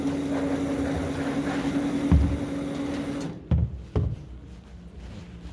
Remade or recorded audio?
recorded